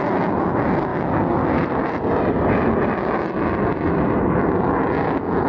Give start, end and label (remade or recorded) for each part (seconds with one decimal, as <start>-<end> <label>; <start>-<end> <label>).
0.0-5.5 recorded